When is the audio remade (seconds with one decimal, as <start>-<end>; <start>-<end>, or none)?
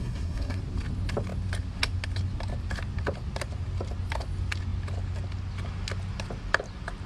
0.0-0.6